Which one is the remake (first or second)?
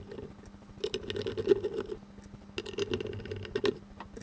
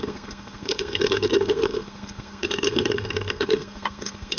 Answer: second